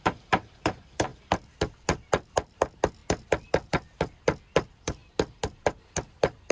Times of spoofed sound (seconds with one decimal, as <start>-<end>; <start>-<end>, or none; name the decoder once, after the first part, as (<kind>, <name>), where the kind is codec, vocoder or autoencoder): none